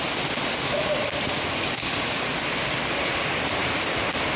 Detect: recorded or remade remade